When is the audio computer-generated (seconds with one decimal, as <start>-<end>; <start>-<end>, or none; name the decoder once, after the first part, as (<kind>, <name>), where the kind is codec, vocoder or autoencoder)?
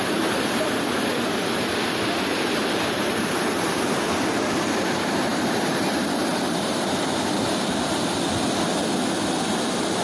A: 2.3-3.7 (vocoder, BigVGAN v2); 5.3-7.2